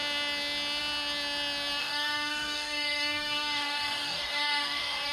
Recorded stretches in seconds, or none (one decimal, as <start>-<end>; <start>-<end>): 0.0-1.8